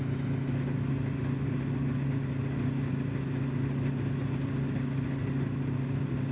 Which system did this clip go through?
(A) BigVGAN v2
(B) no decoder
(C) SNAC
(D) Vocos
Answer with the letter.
B